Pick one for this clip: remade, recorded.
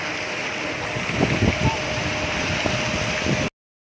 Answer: recorded